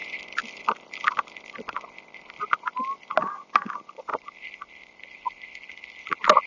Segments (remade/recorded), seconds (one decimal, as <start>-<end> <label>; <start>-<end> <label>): 0.0-6.5 recorded